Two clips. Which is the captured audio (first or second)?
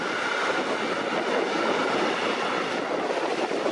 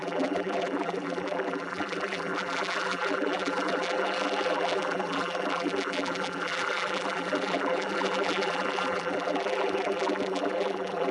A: first